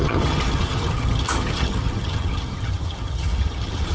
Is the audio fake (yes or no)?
yes